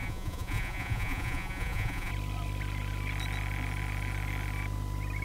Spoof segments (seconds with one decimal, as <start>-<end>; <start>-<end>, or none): 0.0-2.1